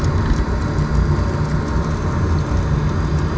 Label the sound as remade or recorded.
recorded